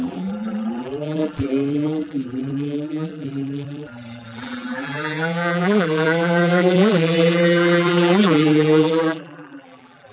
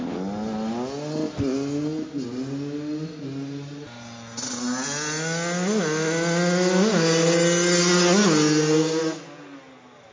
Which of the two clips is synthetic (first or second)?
first